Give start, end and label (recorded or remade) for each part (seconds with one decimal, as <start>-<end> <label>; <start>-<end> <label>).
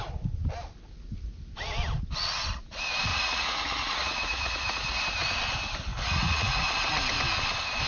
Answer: 0.0-3.1 recorded; 3.1-5.0 remade; 5.0-5.9 recorded; 5.9-6.7 remade; 6.7-7.9 recorded